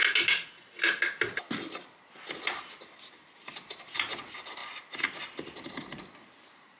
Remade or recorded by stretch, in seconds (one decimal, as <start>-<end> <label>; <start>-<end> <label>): 0.0-6.8 recorded